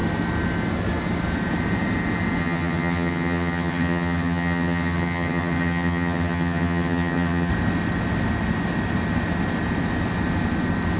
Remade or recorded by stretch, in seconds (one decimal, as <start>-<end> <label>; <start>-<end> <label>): 0.0-2.4 recorded; 2.4-7.5 remade; 7.5-11.0 recorded